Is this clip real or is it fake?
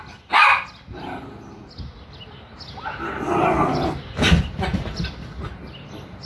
real